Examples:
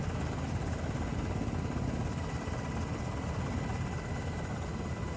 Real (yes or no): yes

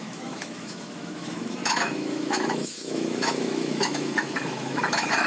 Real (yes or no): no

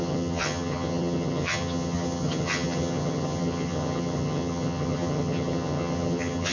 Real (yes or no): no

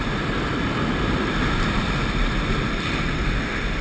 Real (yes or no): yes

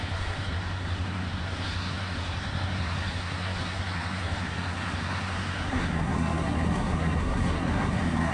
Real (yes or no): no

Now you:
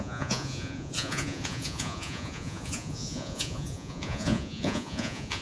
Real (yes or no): no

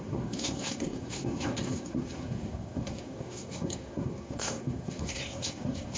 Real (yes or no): no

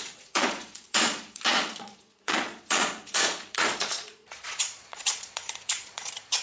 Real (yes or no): no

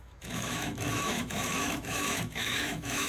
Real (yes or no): no